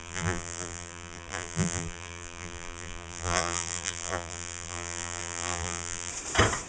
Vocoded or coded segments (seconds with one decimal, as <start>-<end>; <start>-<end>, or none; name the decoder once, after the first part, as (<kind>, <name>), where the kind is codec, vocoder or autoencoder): 0.0-6.1 (vocoder, BigVGAN v2)